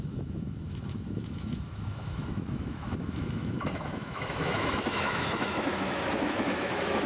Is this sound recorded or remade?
remade